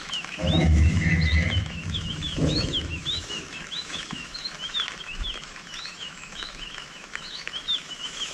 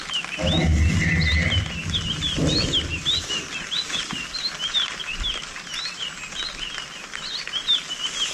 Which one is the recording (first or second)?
second